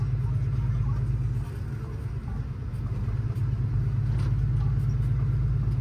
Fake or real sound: real